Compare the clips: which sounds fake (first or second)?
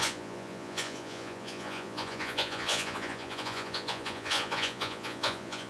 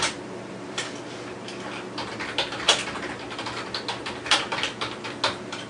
first